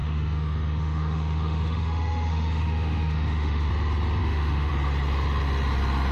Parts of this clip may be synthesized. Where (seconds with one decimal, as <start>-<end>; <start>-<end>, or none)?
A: 0.0-3.7; 4.2-4.7